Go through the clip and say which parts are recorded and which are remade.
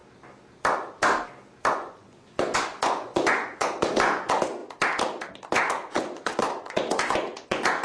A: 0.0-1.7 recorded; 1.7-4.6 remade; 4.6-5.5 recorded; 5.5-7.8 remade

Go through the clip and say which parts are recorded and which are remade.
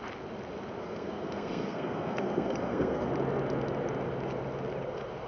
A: 0.0-0.8 recorded; 0.8-3.1 remade; 3.1-5.3 recorded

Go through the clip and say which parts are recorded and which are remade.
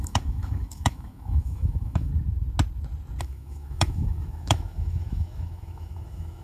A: 0.0-2.1 remade; 2.1-3.2 recorded; 3.2-6.4 remade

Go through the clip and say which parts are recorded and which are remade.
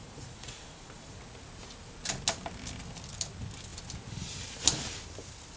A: 0.0-1.2 remade; 1.2-5.6 recorded